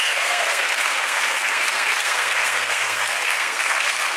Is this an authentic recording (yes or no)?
no